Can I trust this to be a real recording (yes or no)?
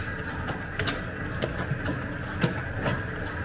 yes